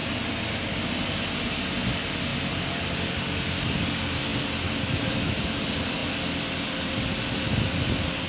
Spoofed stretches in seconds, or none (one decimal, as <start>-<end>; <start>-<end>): none